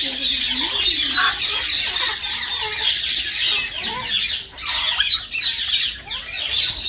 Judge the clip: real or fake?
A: real